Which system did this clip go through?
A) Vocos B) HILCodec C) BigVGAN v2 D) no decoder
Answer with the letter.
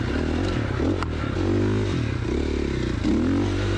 D